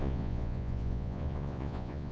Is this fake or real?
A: fake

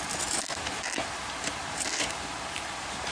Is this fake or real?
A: real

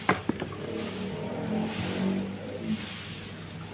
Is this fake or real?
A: real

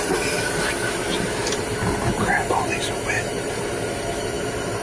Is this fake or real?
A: fake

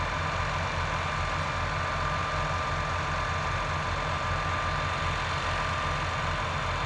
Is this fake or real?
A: real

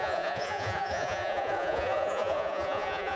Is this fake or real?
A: fake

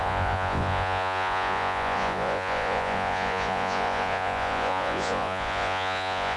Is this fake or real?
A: fake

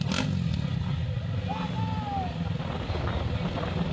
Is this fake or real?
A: real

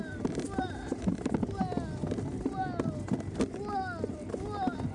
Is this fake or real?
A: real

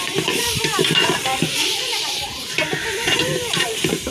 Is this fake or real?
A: fake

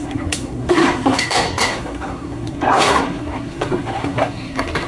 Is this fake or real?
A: fake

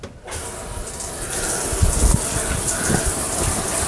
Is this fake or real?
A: real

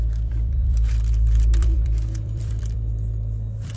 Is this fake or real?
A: fake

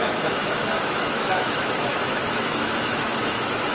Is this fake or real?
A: fake